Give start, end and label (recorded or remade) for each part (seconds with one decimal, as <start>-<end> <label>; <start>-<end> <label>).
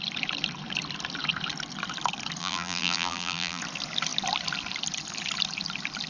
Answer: 0.0-2.4 recorded; 2.4-3.6 remade; 3.6-6.1 recorded